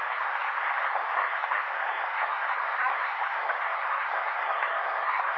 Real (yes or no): no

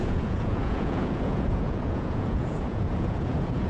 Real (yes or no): no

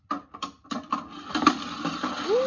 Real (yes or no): yes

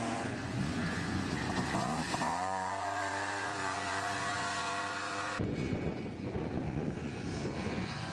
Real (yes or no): no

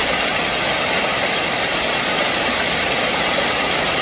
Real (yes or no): yes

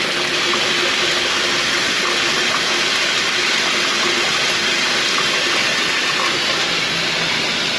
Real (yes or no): yes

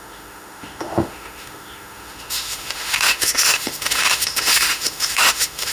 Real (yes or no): no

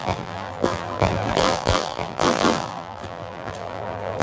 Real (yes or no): no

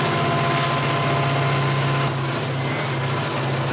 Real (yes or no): yes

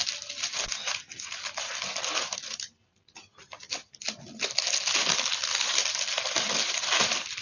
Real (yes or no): yes